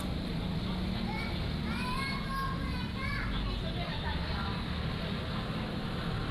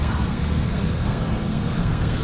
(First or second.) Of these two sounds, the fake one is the second